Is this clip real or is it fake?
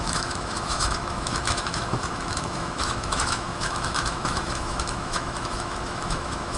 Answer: fake